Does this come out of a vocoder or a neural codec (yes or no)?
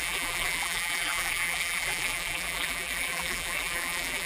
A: yes